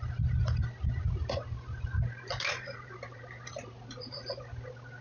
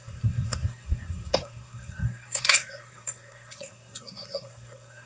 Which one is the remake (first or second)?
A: second